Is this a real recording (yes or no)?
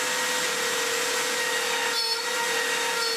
yes